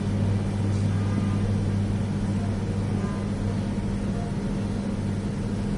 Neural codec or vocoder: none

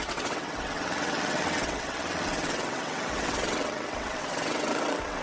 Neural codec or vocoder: vocoder, WaveNeXt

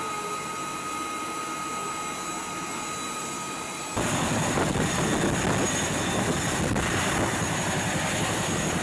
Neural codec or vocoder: none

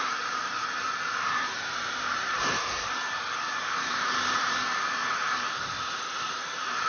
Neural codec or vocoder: vocoder, BigVGAN v2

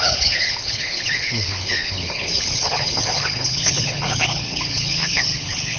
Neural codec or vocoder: codec, HILCodec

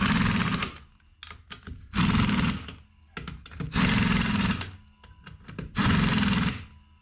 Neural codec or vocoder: none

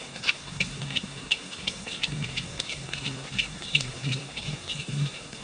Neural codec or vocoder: codec, SNAC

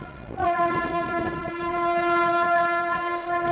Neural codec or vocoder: vocoder, Vocos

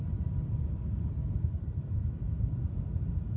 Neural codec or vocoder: none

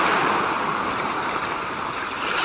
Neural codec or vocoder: none